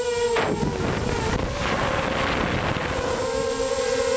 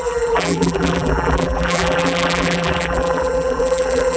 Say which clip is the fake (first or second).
second